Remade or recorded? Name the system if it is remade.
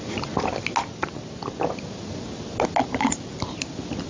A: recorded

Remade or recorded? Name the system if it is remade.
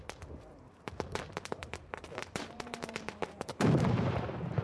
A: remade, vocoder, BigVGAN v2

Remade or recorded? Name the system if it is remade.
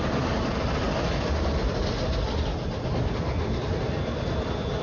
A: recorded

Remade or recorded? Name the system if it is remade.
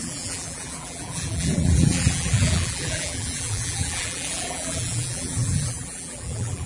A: remade, vocoder, BigVGAN v2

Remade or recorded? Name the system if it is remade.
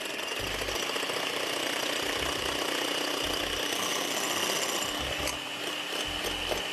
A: recorded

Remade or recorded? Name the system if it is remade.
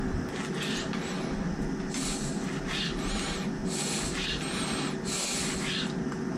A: recorded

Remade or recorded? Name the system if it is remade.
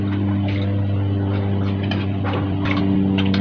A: recorded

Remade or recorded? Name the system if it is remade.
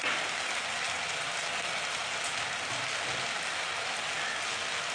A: recorded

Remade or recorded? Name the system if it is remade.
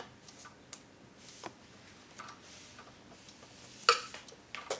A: recorded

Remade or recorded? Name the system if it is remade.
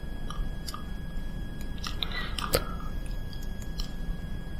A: remade, vocoder, BigVGAN v2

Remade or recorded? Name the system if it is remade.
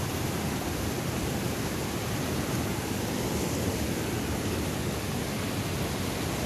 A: recorded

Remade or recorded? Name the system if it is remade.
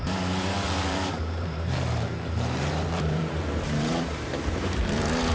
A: remade, vocoder, BigVGAN v2